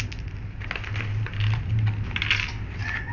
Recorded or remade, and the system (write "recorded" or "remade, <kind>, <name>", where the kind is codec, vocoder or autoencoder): recorded